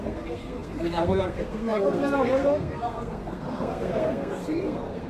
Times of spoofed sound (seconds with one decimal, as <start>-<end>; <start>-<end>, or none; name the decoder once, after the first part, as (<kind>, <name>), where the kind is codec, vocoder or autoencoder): 0.0-5.1 (codec, SNAC)